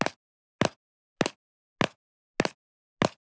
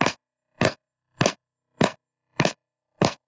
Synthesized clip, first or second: second